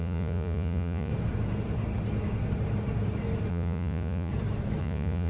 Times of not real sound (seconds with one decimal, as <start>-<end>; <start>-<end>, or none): 0.0-1.1; 3.5-4.3; 4.8-5.3